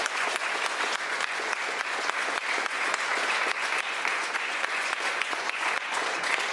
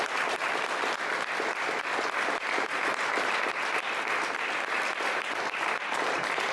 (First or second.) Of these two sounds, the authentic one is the second